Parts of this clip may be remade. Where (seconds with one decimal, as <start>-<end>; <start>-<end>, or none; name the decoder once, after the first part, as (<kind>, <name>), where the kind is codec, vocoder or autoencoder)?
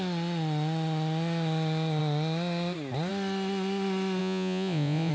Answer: 4.2-5.1 (vocoder, Vocos)